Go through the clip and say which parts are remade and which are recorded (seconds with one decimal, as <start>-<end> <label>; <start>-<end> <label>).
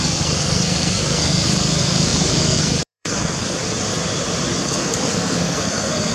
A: 0.0-3.6 remade; 3.6-4.6 recorded; 4.6-6.1 remade